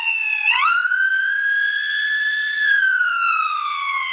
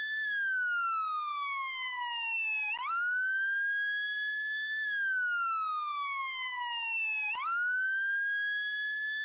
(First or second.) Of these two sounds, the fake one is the first